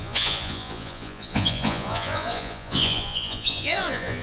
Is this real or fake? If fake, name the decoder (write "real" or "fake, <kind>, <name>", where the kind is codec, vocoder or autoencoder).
fake, vocoder, Vocos